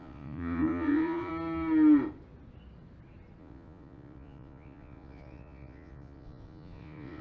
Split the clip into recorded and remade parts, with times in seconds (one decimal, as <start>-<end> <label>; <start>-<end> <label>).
0.0-1.3 remade; 1.3-3.4 recorded; 3.4-7.2 remade

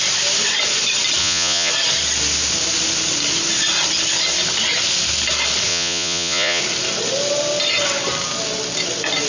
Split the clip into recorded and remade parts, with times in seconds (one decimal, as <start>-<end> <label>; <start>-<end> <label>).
0.0-1.2 recorded; 1.2-1.7 remade; 1.7-5.7 recorded; 5.7-6.6 remade; 6.6-9.3 recorded

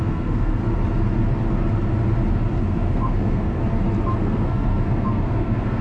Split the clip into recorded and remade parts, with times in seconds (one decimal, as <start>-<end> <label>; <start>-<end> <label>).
0.0-0.6 remade; 0.6-2.6 recorded; 2.6-3.6 remade; 3.6-4.2 recorded; 4.2-5.8 remade

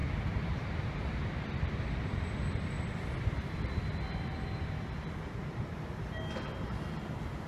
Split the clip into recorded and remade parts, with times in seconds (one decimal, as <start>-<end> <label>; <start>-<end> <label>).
0.0-7.5 recorded

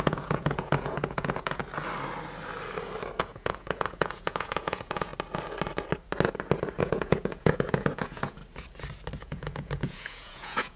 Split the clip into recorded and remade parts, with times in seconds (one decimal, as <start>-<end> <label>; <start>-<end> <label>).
0.0-1.6 remade; 1.6-3.2 recorded; 3.2-5.1 remade; 5.1-6.8 recorded; 6.8-8.4 remade; 8.4-9.2 recorded; 9.2-10.8 remade

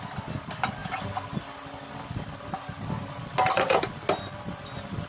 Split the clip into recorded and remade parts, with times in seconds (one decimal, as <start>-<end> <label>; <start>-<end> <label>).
0.0-5.1 recorded

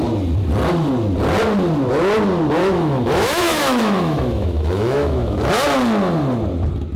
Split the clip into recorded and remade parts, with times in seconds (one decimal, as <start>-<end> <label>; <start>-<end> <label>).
0.0-2.6 recorded; 2.6-5.5 remade; 5.5-7.0 recorded